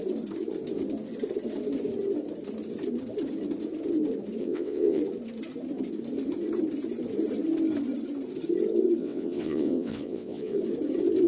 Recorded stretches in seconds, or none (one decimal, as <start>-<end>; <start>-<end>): 0.0-4.4; 5.0-9.0; 10.6-11.3